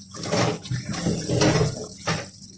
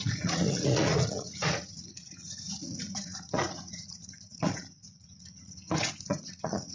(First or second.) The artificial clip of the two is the second